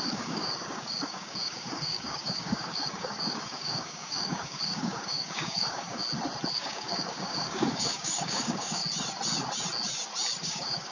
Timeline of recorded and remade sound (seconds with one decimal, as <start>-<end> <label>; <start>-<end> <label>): 0.0-6.0 remade; 6.0-6.5 recorded; 6.5-8.8 remade; 8.8-10.4 recorded; 10.4-10.9 remade